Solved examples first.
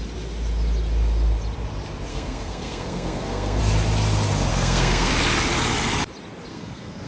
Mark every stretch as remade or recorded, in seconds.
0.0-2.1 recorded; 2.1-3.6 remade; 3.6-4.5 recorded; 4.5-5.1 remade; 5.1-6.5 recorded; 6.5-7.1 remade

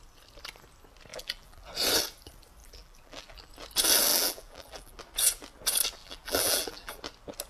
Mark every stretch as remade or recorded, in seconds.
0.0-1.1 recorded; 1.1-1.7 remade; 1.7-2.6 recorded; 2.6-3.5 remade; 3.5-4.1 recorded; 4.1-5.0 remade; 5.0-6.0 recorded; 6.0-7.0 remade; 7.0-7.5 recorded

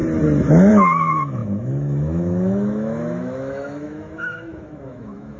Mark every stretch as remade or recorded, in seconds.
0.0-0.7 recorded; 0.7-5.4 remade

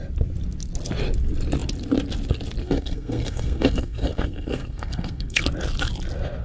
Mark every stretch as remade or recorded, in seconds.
0.0-2.6 recorded; 2.6-5.4 remade; 5.4-6.4 recorded

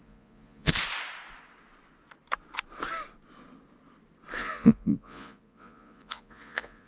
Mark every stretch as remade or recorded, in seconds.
0.0-0.7 remade; 0.7-4.4 recorded; 4.4-6.9 remade